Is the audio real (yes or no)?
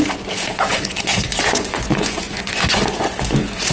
no